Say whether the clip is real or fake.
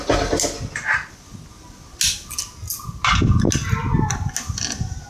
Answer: real